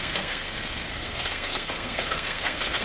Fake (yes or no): yes